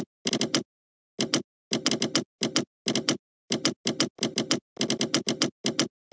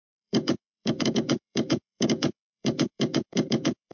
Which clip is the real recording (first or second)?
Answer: first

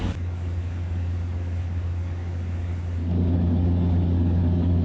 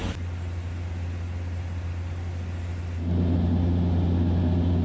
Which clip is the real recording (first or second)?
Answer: second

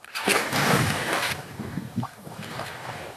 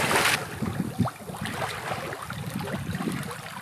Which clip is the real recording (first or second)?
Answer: second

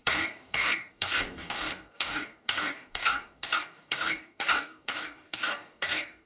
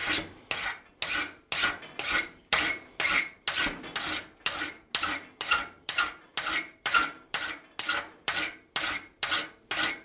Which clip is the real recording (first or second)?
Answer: second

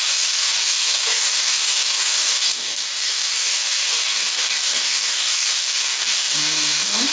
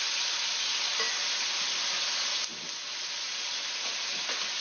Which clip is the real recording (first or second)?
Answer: second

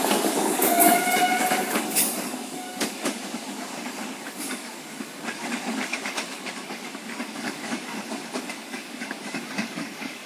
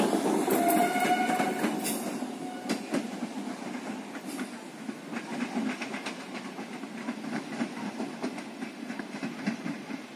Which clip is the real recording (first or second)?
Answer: second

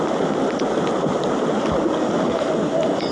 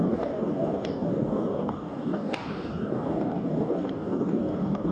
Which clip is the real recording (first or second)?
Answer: first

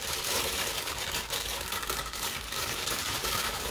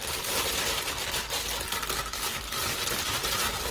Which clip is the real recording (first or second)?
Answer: second